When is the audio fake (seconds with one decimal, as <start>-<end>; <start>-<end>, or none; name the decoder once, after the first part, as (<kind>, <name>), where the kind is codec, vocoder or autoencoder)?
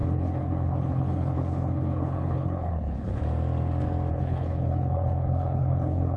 0.0-3.2 (codec, HILCodec); 4.1-6.2